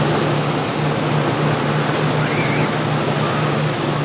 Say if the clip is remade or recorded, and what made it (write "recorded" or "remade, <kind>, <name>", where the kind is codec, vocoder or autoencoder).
recorded